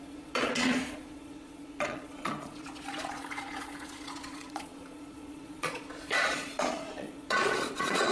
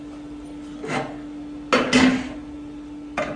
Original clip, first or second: second